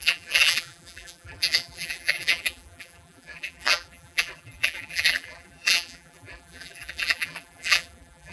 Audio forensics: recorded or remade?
remade